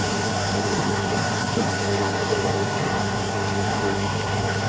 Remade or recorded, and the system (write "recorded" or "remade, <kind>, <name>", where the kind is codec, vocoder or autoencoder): remade, codec, SNAC